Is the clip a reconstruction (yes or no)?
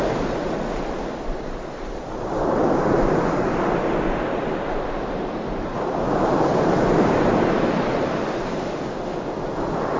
no